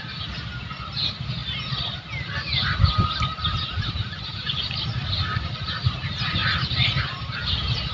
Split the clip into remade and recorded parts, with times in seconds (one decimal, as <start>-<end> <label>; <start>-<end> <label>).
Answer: 0.0-3.3 recorded; 3.3-4.1 remade; 4.1-6.4 recorded; 6.4-7.4 remade; 7.4-7.9 recorded